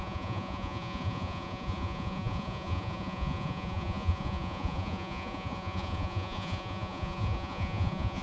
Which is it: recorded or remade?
remade